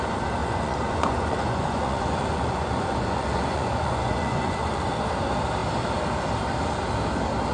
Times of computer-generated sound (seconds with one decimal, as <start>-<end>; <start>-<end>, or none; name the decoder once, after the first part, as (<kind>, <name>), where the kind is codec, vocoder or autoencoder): 0.4-4.9 (vocoder, Vocos)